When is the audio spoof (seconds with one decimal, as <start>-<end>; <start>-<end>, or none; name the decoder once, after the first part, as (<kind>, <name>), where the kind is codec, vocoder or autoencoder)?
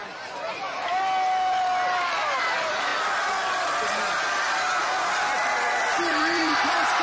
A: 2.0-2.9 (vocoder, BigVGAN v2); 3.5-4.8; 5.4-7.0